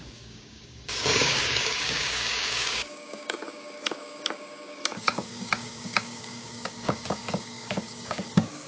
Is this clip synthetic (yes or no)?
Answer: yes